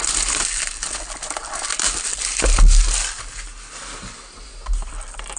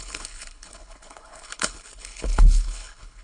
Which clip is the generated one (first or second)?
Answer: second